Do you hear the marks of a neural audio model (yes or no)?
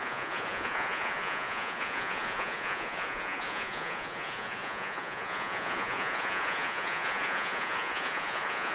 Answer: yes